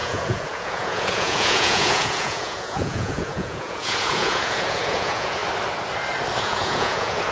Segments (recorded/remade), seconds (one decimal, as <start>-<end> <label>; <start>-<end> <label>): 0.0-5.4 remade; 5.4-6.4 recorded; 6.4-7.3 remade